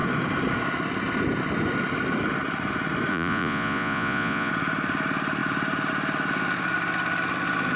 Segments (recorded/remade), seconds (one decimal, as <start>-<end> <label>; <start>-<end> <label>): 0.0-3.1 recorded; 3.1-4.5 remade; 4.5-7.8 recorded